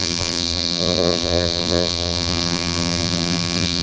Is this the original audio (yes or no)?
no